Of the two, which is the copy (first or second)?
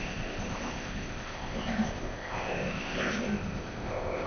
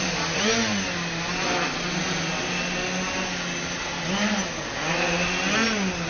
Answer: first